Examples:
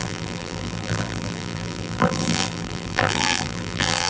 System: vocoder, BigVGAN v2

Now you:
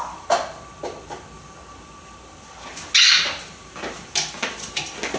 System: none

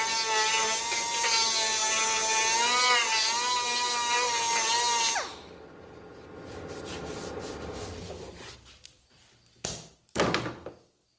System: none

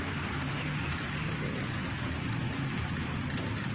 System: none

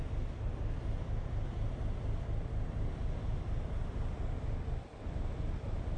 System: none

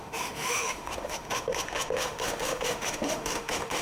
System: autoencoder, DAC-VAE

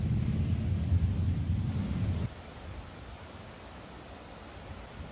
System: none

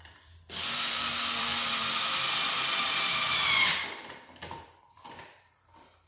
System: vocoder, BigVGAN v2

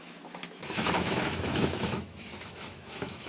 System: autoencoder, DAC-VAE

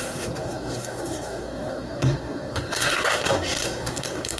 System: codec, SNAC